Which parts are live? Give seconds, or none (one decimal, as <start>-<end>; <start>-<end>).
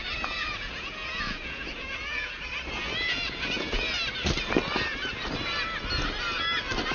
2.4-2.8; 3.8-6.9